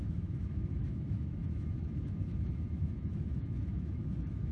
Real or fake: fake